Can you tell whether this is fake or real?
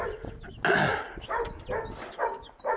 real